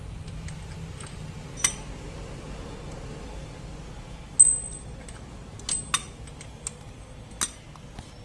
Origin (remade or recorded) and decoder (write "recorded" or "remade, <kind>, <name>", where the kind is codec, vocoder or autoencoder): recorded